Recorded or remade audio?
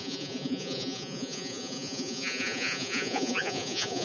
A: remade